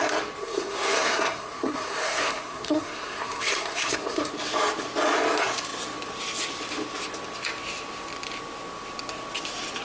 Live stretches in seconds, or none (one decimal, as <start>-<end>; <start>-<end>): 0.0-0.4; 4.3-9.8